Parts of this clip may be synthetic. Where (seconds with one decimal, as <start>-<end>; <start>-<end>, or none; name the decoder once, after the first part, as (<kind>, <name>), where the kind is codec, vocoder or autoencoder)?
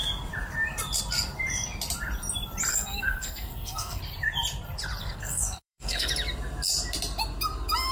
2.7-4.0 (codec, SNAC); 5.0-6.1